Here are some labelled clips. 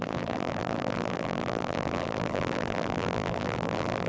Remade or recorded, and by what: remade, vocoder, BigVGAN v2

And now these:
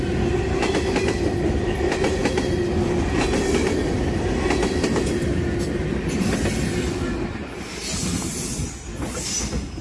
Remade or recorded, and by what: recorded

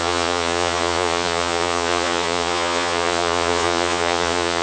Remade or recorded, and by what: remade, vocoder, Vocos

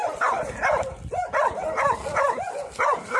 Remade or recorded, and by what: recorded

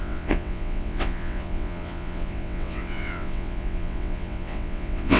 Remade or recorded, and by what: remade, vocoder, WaveNeXt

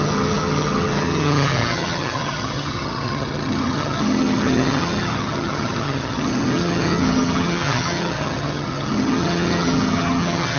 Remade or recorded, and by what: remade, vocoder, HiFi-GAN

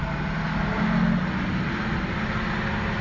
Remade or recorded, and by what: recorded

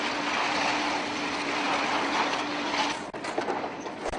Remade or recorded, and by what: recorded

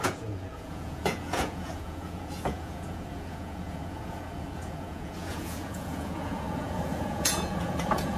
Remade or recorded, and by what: remade, vocoder, Vocos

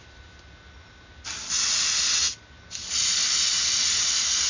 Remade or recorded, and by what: recorded